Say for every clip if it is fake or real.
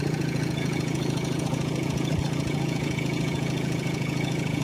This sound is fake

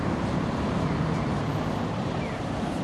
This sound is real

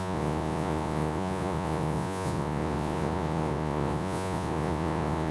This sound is fake